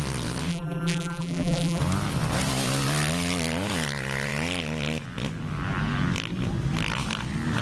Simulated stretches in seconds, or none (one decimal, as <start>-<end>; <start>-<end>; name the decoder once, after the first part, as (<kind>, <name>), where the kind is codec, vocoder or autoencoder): 0.5-1.8 (vocoder, BigVGAN v2)

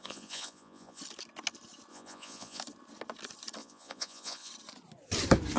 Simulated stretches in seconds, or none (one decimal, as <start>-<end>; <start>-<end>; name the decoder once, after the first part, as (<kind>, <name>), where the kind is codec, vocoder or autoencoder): 0.0-1.0 (vocoder, Vocos); 1.9-2.6; 3.6-4.5

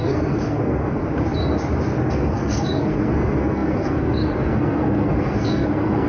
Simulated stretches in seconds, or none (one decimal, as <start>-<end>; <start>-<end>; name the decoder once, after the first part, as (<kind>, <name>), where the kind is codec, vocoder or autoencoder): 0.0-1.0 (codec, SNAC); 2.1-6.1